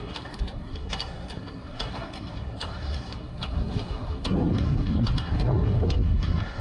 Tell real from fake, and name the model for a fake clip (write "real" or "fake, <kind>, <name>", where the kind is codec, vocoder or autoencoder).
fake, codec, SNAC